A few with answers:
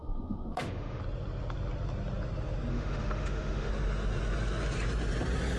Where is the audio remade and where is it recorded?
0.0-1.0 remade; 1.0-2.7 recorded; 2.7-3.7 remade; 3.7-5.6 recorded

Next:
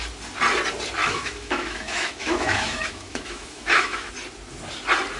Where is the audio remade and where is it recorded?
0.0-1.0 recorded; 1.0-4.1 remade; 4.1-5.2 recorded

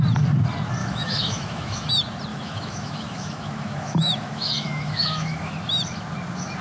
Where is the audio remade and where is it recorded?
0.0-0.8 recorded; 0.8-1.9 remade; 1.9-2.3 recorded; 2.3-5.5 remade; 5.5-6.6 recorded